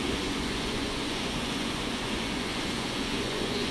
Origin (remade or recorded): remade